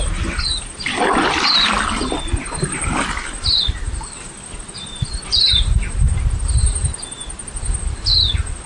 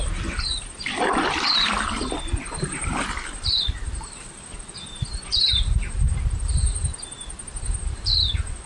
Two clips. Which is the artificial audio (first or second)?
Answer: second